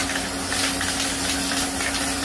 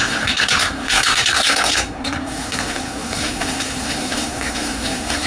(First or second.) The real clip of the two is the first